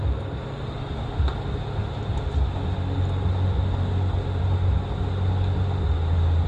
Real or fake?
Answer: real